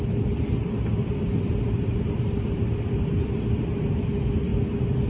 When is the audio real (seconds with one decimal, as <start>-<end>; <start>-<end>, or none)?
0.0-1.0; 3.9-5.1